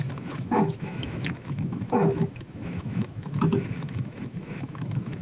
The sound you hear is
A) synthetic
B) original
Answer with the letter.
A